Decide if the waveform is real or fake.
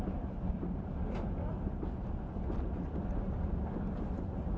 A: real